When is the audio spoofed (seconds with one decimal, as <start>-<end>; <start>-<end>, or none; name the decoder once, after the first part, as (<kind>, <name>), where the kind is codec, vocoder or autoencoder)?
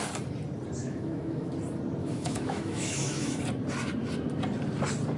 0.8-1.5 (autoencoder, DAC-VAE); 2.0-3.4